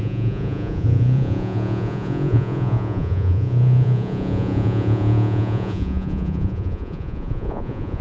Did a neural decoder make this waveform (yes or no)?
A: yes